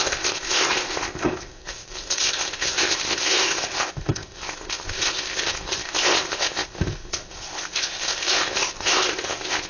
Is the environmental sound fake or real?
fake